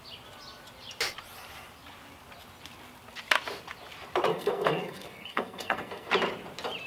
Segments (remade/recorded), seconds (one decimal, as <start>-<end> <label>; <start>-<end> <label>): 0.0-4.3 recorded; 4.3-6.1 remade; 6.1-6.9 recorded